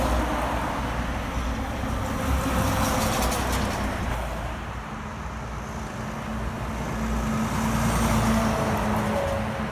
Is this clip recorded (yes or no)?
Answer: yes